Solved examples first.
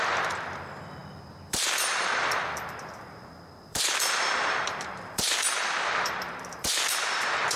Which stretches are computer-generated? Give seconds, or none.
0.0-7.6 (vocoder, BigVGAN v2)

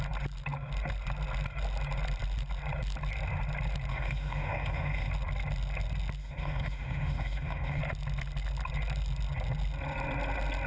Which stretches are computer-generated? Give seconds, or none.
3.9-5.1 (autoencoder, DAC-VAE); 6.2-7.8

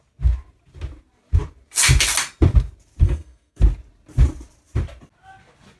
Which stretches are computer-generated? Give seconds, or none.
3.0-3.6 (codec, SNAC)

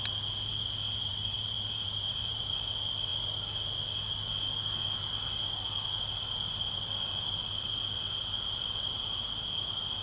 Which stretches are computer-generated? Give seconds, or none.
1.1-2.4 (vocoder, BigVGAN v2)

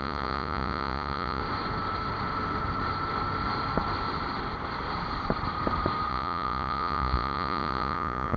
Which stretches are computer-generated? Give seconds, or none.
0.0-1.4 (vocoder, Vocos); 6.1-8.4